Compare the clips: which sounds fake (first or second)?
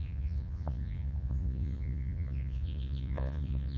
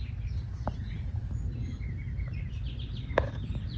first